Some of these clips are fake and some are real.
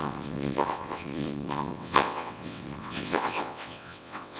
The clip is fake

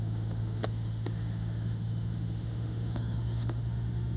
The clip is fake